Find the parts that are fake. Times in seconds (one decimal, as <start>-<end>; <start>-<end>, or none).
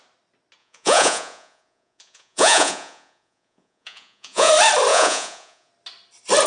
0.6-4.5; 4.9-5.7